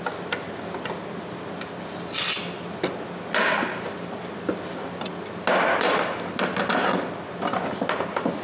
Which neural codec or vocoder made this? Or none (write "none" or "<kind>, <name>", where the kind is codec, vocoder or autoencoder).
none